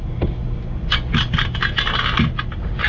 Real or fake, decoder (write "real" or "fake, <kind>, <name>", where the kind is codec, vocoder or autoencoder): real